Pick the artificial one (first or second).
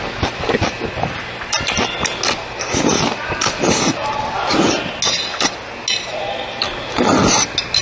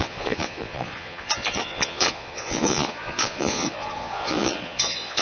second